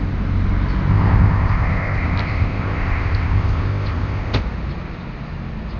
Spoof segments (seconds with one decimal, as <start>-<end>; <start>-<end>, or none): 0.9-4.4